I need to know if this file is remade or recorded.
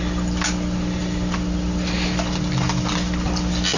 recorded